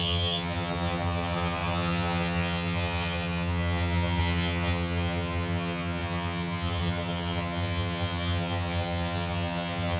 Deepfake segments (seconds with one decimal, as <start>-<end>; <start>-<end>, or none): 0.0-10.0

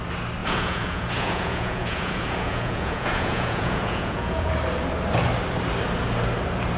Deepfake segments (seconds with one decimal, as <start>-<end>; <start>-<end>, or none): 0.4-4.5

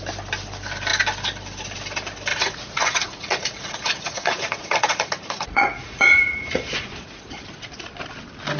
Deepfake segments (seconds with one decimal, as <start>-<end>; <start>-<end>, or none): 2.3-7.3

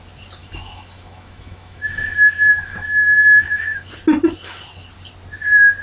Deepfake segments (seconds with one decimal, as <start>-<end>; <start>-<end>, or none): 0.4-3.9

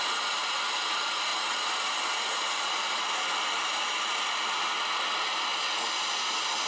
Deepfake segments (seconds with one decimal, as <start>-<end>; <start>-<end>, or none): none

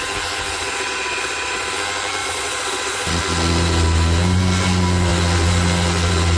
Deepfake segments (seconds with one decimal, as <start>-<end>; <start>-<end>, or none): 0.6-1.7; 2.2-3.2

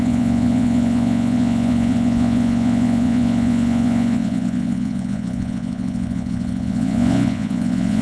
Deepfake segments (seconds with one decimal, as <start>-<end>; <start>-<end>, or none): 0.0-8.0